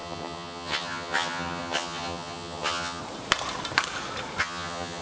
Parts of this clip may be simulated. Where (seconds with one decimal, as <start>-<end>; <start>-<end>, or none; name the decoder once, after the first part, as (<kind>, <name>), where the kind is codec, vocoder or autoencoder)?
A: 0.0-3.0 (vocoder, HiFi-GAN); 4.4-5.0